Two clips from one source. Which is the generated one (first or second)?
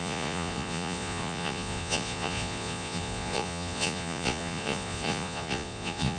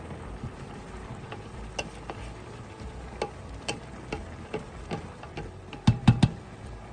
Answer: first